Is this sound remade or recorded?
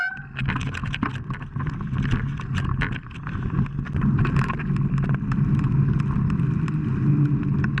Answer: recorded